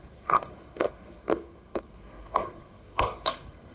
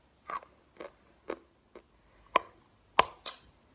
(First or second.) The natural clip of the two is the second